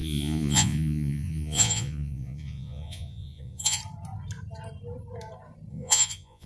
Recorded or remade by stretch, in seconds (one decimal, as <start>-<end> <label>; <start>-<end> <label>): 0.0-3.8 remade; 3.8-5.7 recorded; 5.7-6.5 remade